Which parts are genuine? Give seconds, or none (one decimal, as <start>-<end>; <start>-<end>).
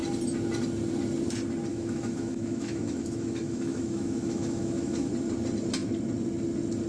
0.0-1.7; 5.1-6.9